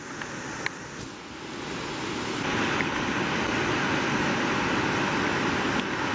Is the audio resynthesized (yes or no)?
no